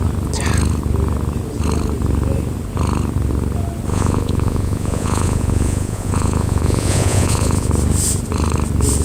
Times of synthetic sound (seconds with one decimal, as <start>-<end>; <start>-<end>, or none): 3.9-7.7